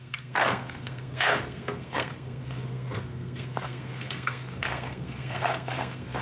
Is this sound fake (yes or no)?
yes